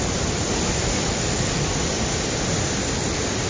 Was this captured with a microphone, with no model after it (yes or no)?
yes